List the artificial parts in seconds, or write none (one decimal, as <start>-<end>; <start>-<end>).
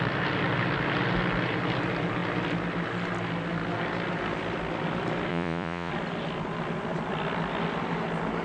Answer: 5.3-5.9